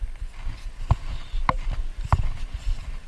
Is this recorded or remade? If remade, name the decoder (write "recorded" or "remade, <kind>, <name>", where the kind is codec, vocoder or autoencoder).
recorded